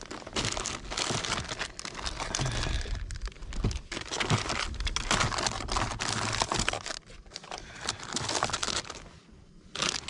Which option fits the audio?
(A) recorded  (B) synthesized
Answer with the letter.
A